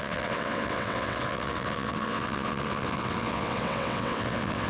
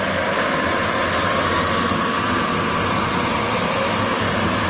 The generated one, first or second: first